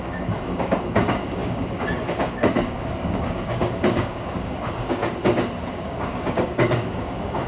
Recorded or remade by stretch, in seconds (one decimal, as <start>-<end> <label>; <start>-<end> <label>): 0.0-5.0 remade; 5.0-5.7 recorded; 5.7-7.5 remade